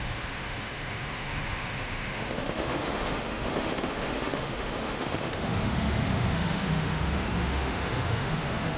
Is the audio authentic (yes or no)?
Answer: no